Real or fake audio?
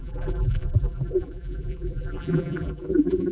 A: fake